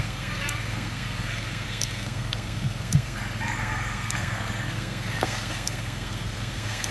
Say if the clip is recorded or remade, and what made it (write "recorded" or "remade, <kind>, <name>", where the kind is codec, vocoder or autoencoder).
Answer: remade, codec, SNAC